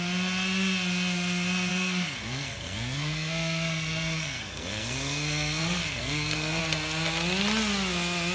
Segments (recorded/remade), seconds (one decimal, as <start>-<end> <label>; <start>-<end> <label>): 0.0-1.7 recorded; 1.7-6.6 remade; 6.6-8.3 recorded